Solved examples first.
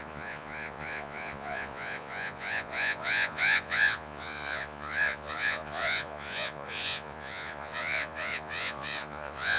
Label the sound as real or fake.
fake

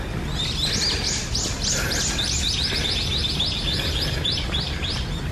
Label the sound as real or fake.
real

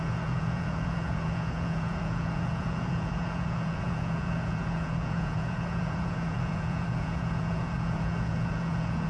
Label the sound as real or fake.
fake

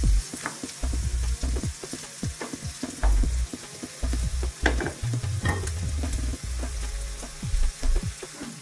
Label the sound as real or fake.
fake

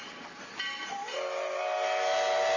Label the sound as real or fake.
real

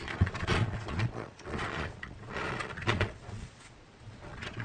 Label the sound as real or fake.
fake